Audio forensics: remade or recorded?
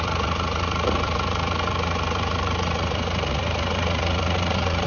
remade